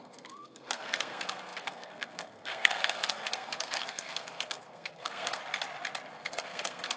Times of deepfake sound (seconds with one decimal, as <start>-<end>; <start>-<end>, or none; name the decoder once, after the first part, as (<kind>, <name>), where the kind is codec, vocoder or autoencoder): 0.0-5.4 (codec, SNAC); 6.1-7.0